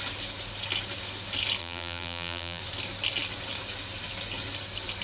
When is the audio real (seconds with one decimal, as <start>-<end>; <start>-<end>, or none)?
0.0-1.6; 2.6-5.0